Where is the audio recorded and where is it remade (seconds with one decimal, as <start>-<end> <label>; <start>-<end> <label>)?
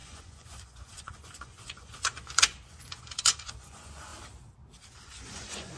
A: 0.0-4.1 remade; 4.1-4.9 recorded; 4.9-5.8 remade